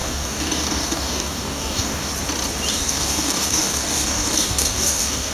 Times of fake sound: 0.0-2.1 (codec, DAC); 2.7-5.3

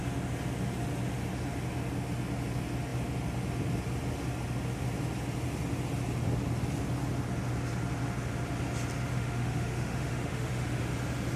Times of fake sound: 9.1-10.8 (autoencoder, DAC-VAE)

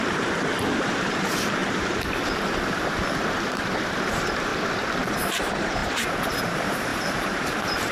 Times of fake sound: 0.0-4.5 (vocoder, BigVGAN v2); 5.1-7.9